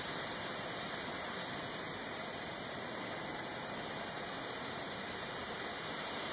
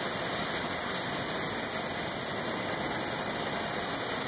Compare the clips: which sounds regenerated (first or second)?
first